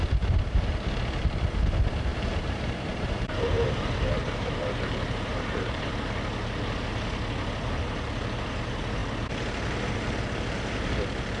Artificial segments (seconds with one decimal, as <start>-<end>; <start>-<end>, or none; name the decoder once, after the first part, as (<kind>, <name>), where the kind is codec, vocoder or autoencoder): 2.1-5.9 (vocoder, BigVGAN v2)